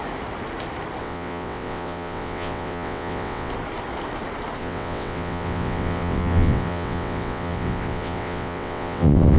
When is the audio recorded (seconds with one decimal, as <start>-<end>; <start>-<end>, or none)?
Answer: 0.0-1.0; 3.5-4.6